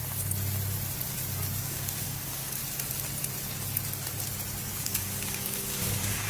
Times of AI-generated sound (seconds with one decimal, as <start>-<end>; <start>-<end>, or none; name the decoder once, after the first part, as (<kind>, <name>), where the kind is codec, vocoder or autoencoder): 1.6-2.6 (codec, DAC); 4.7-6.3